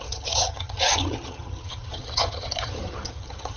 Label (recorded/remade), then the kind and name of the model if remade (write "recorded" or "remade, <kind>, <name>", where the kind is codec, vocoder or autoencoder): remade, vocoder, HiFi-GAN